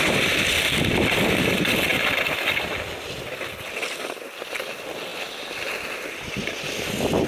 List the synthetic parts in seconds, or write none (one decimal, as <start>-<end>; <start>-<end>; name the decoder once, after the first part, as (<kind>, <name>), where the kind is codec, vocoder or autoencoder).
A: none

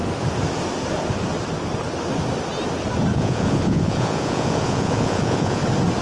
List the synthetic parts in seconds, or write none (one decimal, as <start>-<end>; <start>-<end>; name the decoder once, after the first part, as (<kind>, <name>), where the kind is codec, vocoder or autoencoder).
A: 3.1-5.6 (vocoder, Vocos)